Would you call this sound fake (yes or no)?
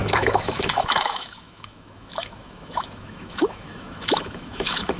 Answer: yes